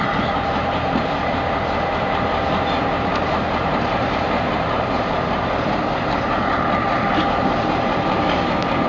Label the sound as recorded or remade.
remade